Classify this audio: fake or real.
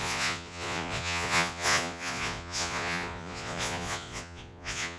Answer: fake